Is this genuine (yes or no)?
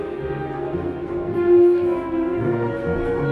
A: no